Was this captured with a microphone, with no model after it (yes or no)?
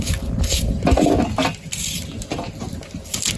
yes